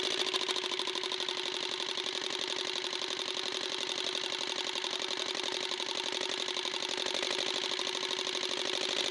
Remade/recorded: recorded